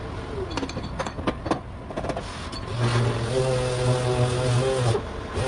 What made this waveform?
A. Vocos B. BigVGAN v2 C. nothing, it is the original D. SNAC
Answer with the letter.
C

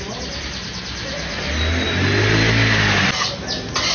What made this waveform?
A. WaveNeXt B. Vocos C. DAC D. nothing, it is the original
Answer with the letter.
D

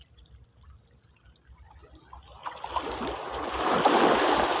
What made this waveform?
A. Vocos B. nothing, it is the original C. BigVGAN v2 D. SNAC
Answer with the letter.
B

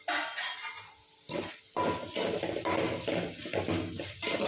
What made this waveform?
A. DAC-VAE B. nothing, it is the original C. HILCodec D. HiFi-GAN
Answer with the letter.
B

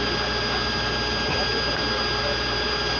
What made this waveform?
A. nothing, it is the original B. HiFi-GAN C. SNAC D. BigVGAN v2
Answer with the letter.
D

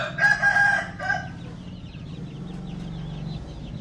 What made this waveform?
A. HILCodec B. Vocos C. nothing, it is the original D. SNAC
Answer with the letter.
C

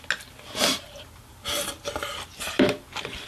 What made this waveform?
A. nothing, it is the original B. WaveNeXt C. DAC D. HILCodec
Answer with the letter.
A